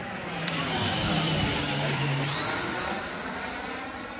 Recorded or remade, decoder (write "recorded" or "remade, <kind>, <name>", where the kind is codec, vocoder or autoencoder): remade, vocoder, BigVGAN v2